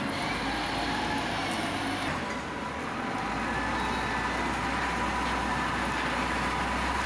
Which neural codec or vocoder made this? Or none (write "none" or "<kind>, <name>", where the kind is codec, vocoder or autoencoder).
none